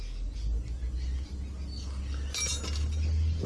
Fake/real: real